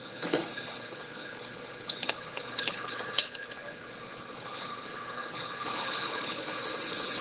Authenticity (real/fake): fake